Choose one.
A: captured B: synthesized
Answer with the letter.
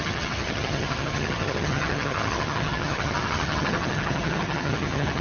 B